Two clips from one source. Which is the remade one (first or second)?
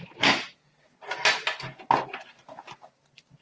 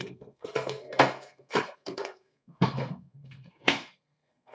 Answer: second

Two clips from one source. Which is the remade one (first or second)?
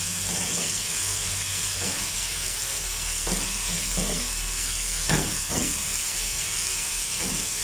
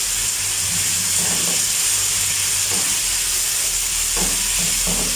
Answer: first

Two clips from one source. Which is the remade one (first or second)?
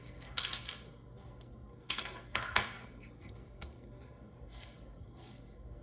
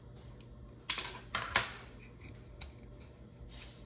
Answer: first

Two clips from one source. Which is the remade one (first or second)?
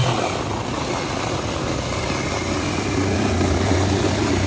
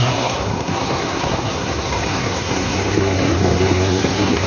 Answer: second